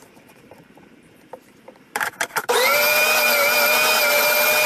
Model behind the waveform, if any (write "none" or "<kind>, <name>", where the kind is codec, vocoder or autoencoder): vocoder, BigVGAN v2